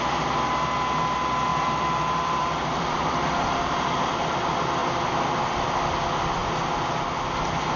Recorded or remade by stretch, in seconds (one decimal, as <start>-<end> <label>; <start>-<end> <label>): 0.0-1.5 recorded; 1.5-3.2 remade; 3.2-4.8 recorded; 4.8-5.4 remade; 5.4-7.8 recorded